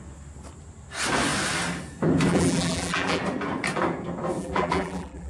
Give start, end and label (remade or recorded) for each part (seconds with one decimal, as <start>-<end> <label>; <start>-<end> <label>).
0.0-2.3 recorded; 2.3-3.2 remade; 3.2-4.4 recorded; 4.4-5.3 remade